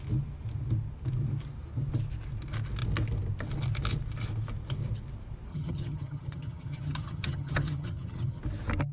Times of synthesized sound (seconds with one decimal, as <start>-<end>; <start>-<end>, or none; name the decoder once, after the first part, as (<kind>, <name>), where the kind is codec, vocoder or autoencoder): 5.5-8.4 (vocoder, HiFi-GAN)